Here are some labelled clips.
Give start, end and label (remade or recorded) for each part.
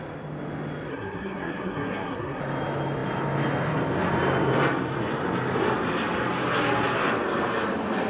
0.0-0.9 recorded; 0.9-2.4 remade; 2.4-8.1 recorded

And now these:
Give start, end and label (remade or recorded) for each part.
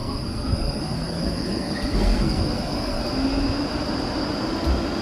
0.0-3.0 remade; 3.0-5.0 recorded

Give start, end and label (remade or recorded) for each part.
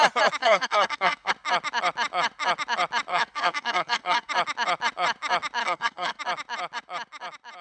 0.0-0.4 recorded; 0.4-1.3 remade; 1.3-3.1 recorded; 3.1-4.3 remade; 4.3-5.6 recorded; 5.6-6.2 remade; 6.2-7.6 recorded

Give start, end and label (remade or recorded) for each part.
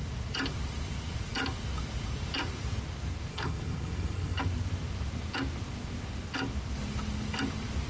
0.0-3.3 recorded; 3.3-4.4 remade; 4.4-7.9 recorded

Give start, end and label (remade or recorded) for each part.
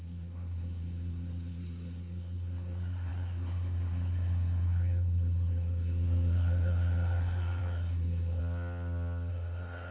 0.0-8.4 remade; 8.4-9.3 recorded; 9.3-9.9 remade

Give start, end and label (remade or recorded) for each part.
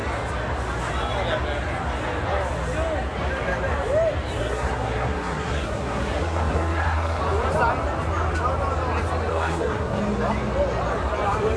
0.0-4.4 recorded; 4.4-7.2 remade; 7.2-9.3 recorded; 9.3-10.0 remade; 10.0-11.6 recorded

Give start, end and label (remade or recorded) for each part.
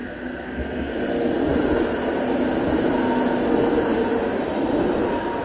0.0-1.0 remade; 1.0-5.4 recorded